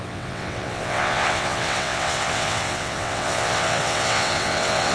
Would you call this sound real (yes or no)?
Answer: no